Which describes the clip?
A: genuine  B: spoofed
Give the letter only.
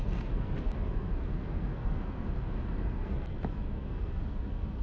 B